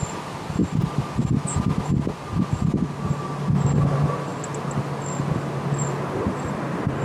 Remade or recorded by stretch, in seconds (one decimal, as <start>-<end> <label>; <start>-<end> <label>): 0.0-7.0 recorded